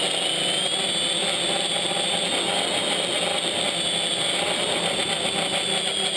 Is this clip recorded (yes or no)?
yes